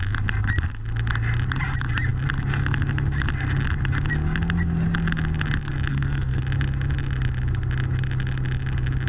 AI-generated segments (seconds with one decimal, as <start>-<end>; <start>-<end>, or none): 5.9-6.4